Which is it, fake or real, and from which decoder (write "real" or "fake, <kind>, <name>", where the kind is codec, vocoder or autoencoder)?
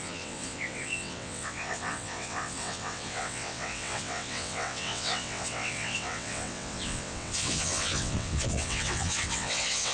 fake, vocoder, WaveNeXt